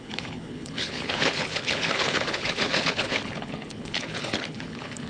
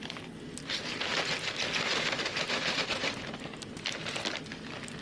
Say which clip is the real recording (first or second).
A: second